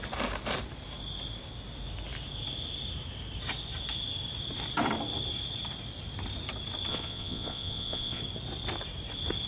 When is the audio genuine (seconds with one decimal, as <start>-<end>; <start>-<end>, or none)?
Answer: 0.0-6.9; 8.2-9.5

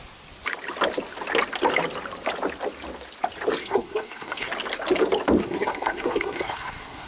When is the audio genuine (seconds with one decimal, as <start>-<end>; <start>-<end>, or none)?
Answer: 0.0-3.6; 4.5-5.4

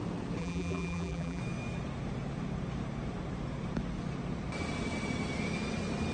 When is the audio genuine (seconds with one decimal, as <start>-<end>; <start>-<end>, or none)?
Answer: 0.0-0.4; 1.4-6.1

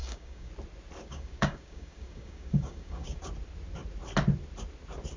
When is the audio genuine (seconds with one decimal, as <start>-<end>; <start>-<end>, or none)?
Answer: 0.5-1.0; 3.2-5.2